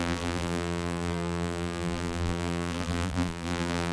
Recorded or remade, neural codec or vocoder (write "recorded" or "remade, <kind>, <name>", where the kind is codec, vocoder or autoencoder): remade, vocoder, BigVGAN v2